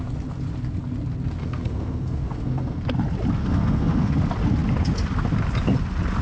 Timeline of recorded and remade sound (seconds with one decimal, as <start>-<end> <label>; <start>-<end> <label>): 0.0-1.4 recorded; 1.4-2.8 remade; 2.8-3.4 recorded; 3.4-4.1 remade; 4.1-6.2 recorded